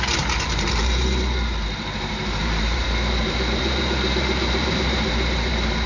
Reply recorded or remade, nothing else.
remade